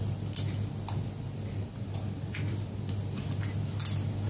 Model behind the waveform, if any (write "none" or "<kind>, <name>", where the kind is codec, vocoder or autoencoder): none